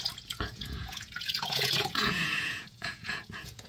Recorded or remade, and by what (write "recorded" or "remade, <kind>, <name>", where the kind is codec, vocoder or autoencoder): remade, vocoder, Vocos